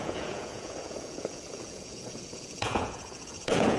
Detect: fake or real fake